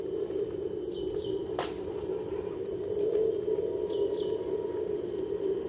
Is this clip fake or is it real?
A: real